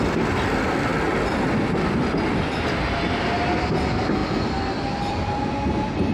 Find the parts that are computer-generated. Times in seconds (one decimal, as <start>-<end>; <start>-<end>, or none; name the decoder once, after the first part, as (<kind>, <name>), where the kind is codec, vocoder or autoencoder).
none